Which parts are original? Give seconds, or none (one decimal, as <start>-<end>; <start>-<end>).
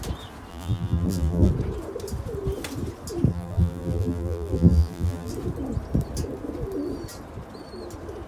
0.0-0.5; 1.5-3.3; 5.3-8.3